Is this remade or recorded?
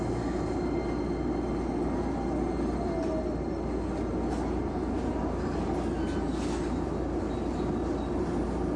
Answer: recorded